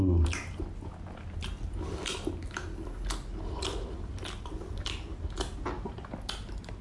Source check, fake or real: real